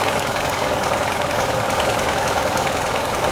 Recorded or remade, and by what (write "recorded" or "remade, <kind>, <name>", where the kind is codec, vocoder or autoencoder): remade, codec, DAC